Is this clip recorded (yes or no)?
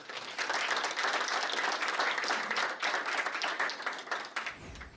yes